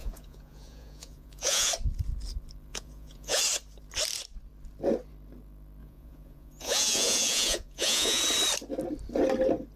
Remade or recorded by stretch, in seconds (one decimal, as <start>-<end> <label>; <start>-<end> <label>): 0.0-1.7 remade; 1.7-2.7 recorded; 2.7-3.4 remade; 3.4-5.8 recorded; 5.8-8.2 remade; 8.2-9.8 recorded